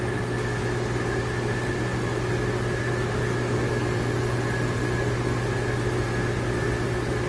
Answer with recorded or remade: recorded